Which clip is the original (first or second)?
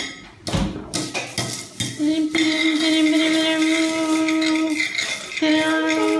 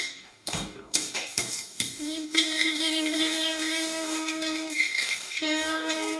first